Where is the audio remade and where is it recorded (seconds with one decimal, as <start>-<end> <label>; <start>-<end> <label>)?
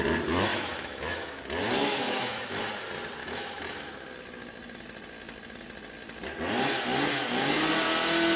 0.0-0.5 recorded; 0.5-1.4 remade; 1.4-1.8 recorded; 1.8-2.6 remade; 2.6-3.2 recorded; 3.2-3.8 remade; 3.8-8.4 recorded